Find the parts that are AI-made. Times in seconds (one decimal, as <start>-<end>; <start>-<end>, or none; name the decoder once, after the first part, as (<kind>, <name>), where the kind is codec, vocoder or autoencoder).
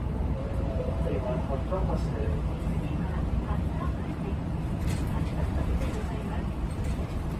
0.0-7.4 (vocoder, BigVGAN v2)